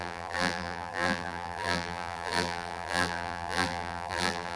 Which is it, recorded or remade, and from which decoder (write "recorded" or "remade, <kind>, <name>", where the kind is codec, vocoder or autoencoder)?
remade, vocoder, BigVGAN v2